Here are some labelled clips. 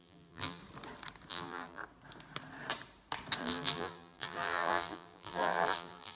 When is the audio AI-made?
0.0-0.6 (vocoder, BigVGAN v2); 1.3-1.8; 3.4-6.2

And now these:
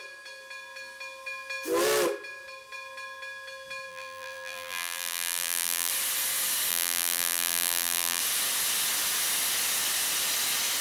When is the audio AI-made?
3.9-5.9 (vocoder, BigVGAN v2); 6.7-8.2